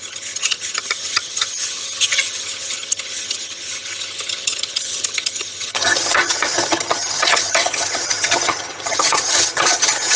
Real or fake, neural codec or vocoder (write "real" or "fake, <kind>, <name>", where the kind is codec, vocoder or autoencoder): fake, vocoder, HiFi-GAN